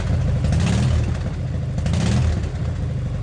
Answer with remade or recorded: recorded